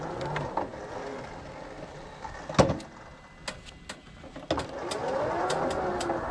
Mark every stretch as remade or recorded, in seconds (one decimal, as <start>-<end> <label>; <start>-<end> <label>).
0.0-6.3 recorded